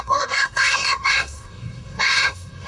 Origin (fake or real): fake